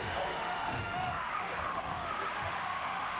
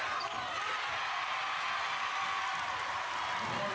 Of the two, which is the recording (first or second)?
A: second